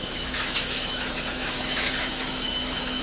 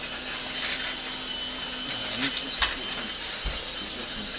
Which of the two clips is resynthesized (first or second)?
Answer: first